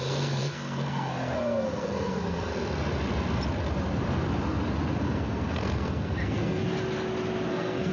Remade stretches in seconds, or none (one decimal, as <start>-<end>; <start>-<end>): 0.0-2.5; 5.0-6.6; 7.5-7.9